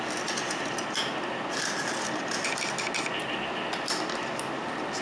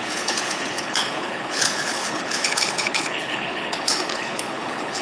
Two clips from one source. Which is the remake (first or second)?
second